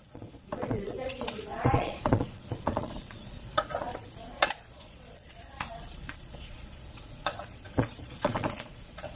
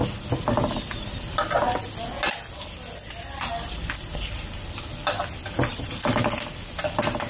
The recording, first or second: second